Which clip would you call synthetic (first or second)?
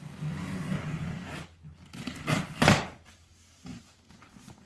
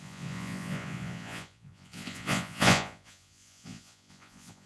second